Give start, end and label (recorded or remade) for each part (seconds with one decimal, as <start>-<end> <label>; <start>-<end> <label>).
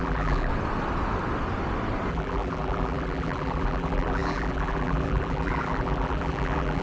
0.0-0.5 remade; 0.5-2.1 recorded; 2.1-6.8 remade